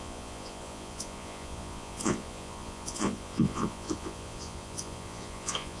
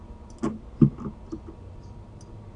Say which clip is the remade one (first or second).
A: first